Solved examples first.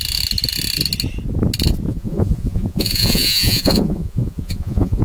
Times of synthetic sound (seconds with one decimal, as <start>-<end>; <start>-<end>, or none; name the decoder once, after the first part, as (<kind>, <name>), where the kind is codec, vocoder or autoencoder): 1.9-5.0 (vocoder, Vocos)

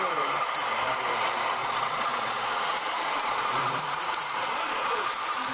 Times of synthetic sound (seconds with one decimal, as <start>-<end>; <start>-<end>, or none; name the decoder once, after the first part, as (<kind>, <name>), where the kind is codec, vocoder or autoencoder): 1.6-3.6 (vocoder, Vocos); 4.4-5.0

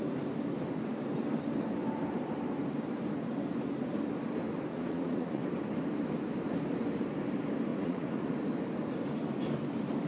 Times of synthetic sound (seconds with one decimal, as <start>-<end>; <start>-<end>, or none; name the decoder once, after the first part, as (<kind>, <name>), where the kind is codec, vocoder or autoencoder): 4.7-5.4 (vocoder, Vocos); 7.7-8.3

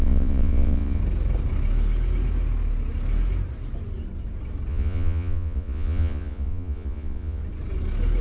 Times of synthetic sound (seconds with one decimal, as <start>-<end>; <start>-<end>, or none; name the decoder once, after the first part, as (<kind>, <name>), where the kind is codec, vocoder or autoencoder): 0.0-1.0 (vocoder, Vocos); 4.7-7.4